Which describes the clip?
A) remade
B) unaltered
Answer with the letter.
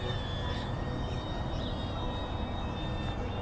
B